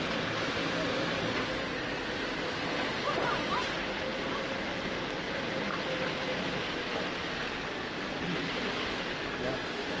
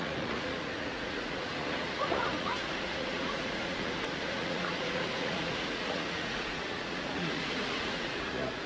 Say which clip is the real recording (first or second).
first